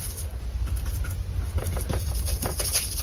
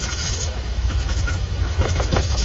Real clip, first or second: first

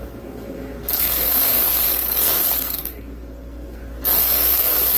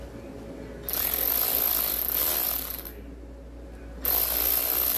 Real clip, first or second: second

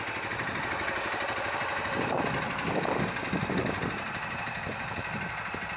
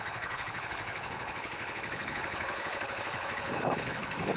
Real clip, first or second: first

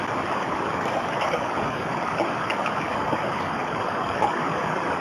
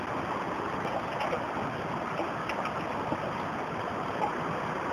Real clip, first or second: second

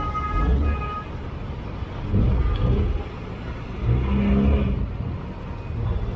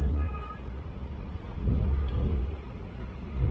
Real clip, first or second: first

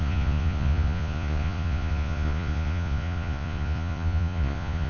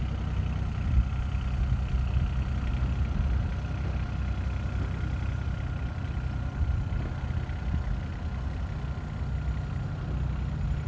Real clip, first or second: second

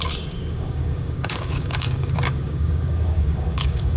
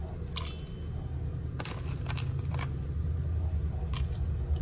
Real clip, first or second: second